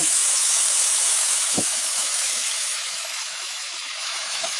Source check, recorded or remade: remade